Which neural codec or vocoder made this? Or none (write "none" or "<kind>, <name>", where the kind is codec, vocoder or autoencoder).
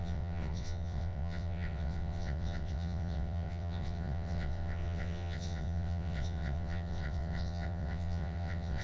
vocoder, WaveNeXt